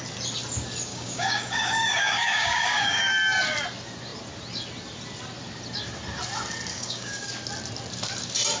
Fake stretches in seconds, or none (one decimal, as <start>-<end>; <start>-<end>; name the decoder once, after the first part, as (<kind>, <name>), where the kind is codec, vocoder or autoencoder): 0.9-3.0 (codec, DAC); 6.7-7.3

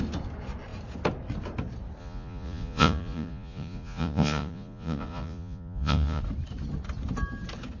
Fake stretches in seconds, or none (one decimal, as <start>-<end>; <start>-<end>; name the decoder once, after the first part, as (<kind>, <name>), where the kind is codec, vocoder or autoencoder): 2.0-6.2 (vocoder, Vocos)

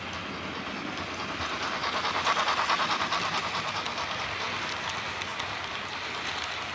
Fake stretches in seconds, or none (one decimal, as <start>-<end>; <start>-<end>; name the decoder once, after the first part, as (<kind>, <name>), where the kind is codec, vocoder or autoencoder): none

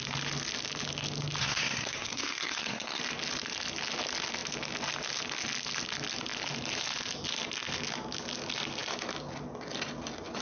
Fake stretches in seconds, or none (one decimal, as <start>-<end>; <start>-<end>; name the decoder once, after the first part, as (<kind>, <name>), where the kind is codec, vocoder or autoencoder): 1.4-3.0 (codec, SNAC)

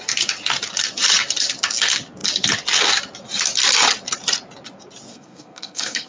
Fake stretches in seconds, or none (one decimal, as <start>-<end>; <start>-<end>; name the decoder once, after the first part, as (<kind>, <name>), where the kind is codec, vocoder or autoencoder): 5.1-6.1 (codec, SNAC)